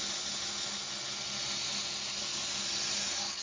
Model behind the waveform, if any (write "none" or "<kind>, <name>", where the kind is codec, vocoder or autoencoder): none